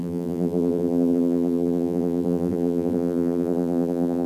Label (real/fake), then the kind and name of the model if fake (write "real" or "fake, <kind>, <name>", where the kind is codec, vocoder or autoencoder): fake, vocoder, BigVGAN v2